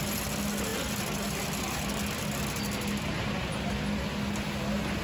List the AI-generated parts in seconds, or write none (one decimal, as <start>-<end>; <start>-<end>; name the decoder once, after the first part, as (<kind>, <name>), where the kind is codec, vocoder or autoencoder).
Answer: none